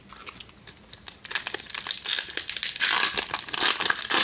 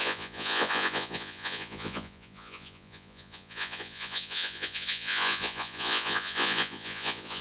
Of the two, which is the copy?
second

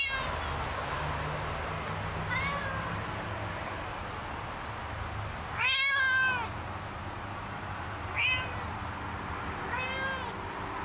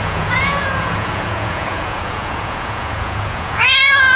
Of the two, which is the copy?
second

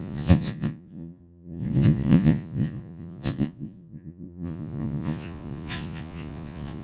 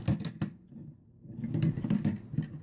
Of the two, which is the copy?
first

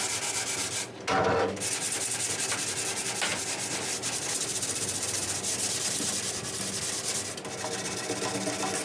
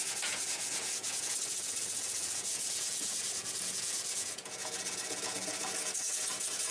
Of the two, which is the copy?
second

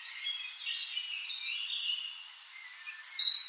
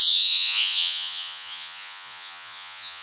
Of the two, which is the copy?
second